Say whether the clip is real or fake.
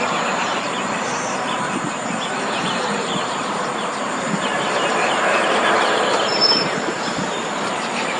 fake